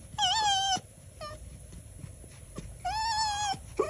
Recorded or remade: recorded